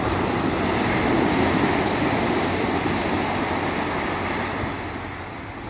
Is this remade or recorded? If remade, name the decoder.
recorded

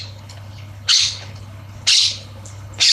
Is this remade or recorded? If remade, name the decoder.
remade, codec, HILCodec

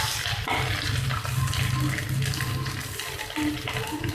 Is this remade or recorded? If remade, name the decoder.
recorded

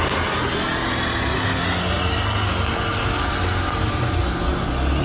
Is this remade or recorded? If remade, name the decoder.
recorded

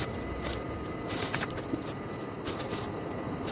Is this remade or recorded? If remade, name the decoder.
recorded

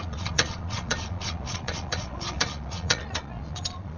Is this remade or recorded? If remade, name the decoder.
remade, vocoder, Vocos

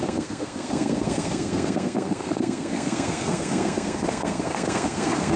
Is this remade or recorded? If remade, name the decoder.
remade, codec, SNAC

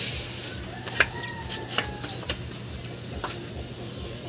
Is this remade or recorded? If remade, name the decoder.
recorded